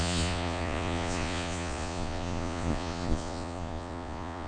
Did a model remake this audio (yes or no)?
yes